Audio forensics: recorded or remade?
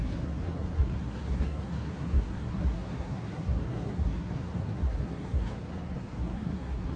remade